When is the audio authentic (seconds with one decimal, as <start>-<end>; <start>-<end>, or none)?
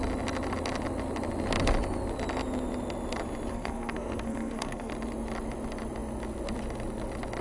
0.0-3.5; 4.9-7.4